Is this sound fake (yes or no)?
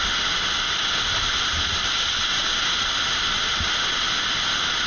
no